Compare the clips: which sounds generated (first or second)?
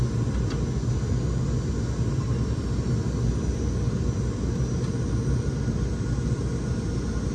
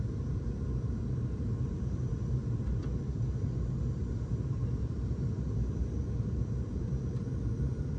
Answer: second